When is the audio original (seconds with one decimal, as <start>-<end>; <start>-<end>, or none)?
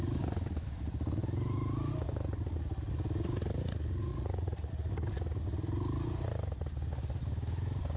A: 0.0-4.1; 4.7-8.0